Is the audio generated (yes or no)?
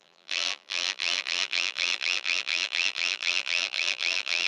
yes